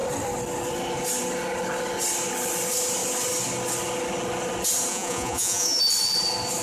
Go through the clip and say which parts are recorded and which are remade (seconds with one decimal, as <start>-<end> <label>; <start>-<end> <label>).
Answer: 0.0-4.9 recorded; 4.9-5.8 remade; 5.8-6.6 recorded